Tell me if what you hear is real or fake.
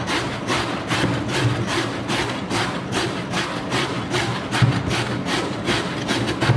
real